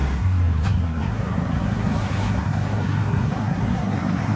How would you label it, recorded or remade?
remade